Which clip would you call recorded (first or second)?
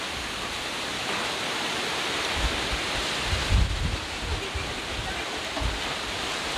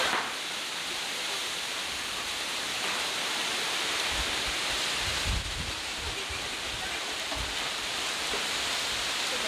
first